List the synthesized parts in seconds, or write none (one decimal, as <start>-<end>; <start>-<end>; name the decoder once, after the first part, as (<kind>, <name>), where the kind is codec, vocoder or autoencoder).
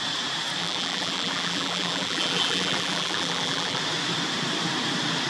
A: 0.6-3.8 (vocoder, BigVGAN v2)